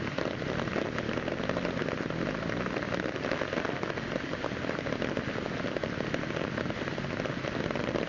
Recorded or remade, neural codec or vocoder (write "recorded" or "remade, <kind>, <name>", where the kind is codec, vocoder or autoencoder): recorded